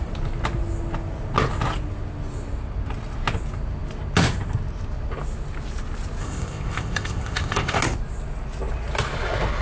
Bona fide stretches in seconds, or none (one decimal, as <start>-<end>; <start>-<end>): 0.0-6.2; 7.8-9.6